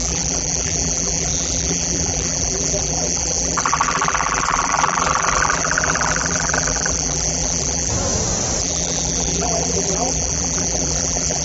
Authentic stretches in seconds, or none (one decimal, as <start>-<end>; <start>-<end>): 7.9-8.6